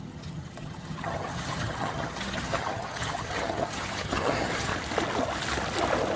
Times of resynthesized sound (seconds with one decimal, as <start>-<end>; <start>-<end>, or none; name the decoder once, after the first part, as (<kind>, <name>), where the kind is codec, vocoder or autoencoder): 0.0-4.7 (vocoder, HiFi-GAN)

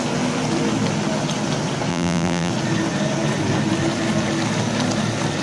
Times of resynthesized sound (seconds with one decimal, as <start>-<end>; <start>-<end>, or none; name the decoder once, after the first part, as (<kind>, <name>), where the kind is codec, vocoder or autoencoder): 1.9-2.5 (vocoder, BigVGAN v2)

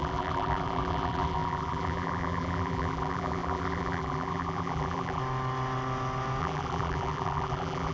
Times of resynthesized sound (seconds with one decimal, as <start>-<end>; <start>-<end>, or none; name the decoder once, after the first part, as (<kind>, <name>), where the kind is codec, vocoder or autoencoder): 0.0-5.2 (vocoder, BigVGAN v2); 6.4-7.9

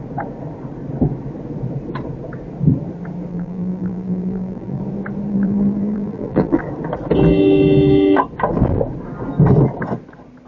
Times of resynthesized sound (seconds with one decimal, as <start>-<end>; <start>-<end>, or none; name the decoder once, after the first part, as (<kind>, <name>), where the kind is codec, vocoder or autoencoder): 3.3-4.8 (vocoder, BigVGAN v2); 5.3-6.6

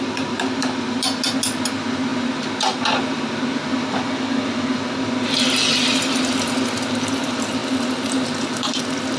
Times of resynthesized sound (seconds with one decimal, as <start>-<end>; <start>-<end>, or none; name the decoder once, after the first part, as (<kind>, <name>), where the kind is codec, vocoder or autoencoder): none

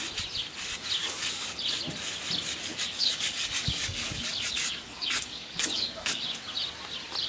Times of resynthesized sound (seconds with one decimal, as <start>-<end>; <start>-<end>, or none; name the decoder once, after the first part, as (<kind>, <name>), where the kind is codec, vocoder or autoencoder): 1.0-1.6 (codec, DAC); 2.7-6.2

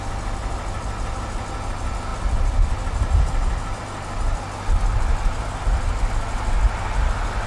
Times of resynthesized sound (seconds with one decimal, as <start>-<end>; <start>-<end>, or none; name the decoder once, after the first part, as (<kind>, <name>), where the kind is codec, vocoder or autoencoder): none